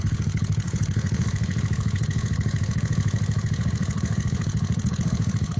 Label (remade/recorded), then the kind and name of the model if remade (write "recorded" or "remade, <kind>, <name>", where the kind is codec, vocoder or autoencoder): remade, codec, HILCodec